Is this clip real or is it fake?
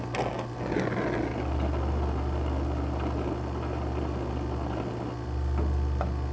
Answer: real